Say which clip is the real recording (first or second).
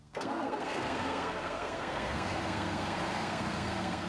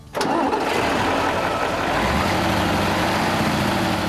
second